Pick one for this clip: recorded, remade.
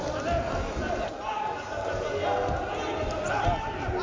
recorded